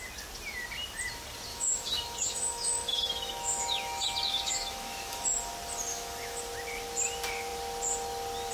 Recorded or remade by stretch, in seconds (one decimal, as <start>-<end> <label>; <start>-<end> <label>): 0.0-1.5 recorded; 1.5-5.5 remade; 5.5-5.9 recorded; 5.9-6.4 remade; 6.4-8.5 recorded